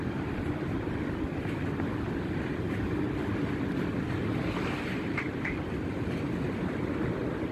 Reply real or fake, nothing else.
real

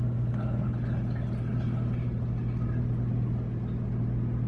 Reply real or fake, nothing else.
real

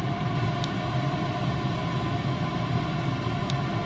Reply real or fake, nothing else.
real